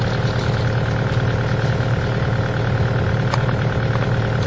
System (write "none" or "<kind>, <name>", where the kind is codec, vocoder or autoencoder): none